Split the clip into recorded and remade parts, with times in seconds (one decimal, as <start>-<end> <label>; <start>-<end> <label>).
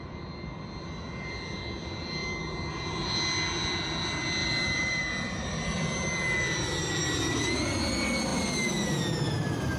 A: 0.0-4.4 recorded; 4.4-5.0 remade; 5.0-9.8 recorded